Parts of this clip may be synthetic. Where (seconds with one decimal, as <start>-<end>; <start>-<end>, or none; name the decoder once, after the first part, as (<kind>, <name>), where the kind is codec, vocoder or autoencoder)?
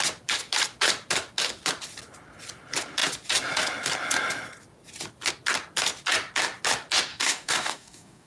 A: 7.1-8.3 (codec, DAC)